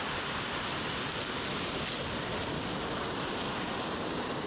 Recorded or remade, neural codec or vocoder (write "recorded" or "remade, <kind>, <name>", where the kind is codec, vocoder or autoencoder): recorded